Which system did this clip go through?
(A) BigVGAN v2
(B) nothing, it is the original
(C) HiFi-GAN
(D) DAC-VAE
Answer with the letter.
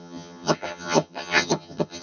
C